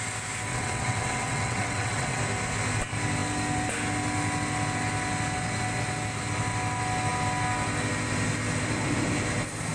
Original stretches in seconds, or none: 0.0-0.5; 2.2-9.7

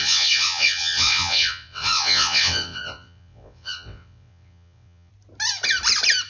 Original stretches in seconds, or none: 5.1-6.3